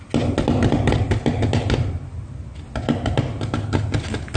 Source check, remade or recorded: recorded